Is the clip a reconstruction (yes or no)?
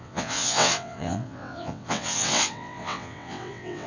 yes